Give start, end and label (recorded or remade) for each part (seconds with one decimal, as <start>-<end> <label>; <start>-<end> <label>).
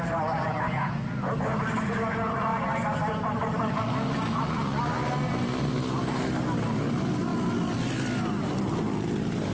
0.0-9.5 recorded